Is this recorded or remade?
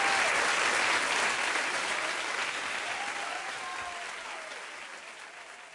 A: recorded